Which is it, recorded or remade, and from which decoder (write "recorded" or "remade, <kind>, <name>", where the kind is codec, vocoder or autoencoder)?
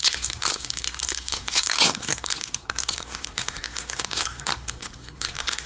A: remade, codec, SNAC